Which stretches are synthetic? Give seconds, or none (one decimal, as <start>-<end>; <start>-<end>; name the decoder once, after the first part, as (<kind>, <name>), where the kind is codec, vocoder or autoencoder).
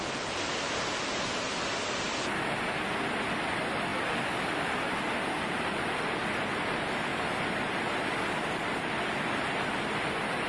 none